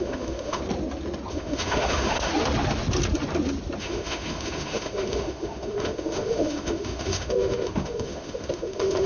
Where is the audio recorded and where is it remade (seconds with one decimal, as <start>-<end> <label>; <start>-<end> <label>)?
0.0-0.6 remade; 0.6-1.3 recorded; 1.3-2.3 remade; 2.3-3.8 recorded; 3.8-9.1 remade